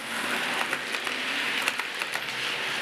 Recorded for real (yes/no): yes